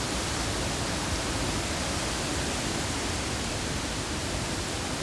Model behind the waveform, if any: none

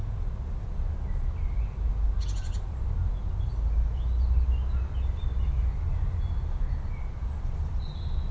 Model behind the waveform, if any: none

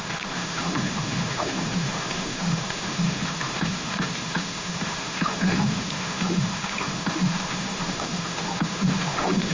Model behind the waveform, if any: autoencoder, DAC-VAE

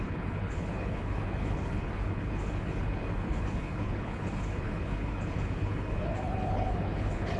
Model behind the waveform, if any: codec, HILCodec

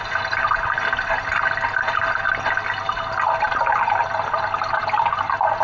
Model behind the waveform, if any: none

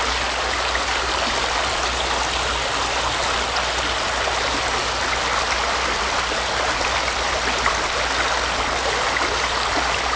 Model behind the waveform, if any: none